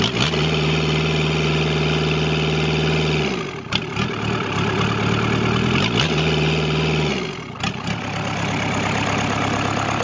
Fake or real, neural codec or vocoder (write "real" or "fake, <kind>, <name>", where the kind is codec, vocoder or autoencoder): real